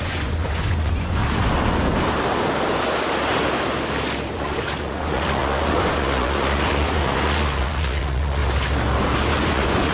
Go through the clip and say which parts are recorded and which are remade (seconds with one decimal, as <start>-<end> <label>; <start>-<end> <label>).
0.0-1.2 remade; 1.2-4.3 recorded; 4.3-8.4 remade; 8.4-9.3 recorded; 9.3-9.9 remade